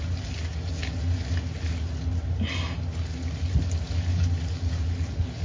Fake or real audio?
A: real